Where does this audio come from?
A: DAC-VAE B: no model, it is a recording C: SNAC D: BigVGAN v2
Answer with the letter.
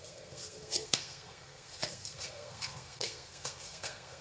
C